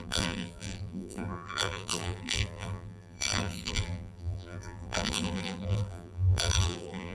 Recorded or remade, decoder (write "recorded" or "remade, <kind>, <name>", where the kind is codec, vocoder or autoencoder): remade, vocoder, BigVGAN v2